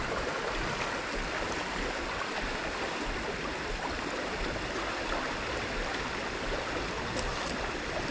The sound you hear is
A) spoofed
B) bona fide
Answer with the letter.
B